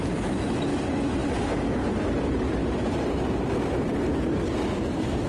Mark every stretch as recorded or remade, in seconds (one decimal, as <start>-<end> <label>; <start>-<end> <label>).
0.0-5.3 recorded